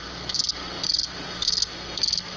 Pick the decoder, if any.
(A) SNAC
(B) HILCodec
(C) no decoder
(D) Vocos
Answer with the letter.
A